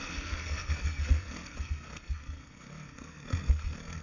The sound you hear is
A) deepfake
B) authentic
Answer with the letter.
A